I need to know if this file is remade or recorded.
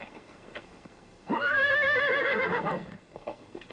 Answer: remade